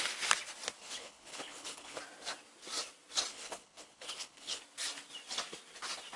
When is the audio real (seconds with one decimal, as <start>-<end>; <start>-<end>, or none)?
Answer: 0.0-0.8; 2.0-3.3; 4.6-6.2